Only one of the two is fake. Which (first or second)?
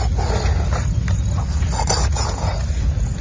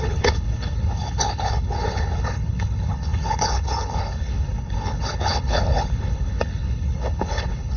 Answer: second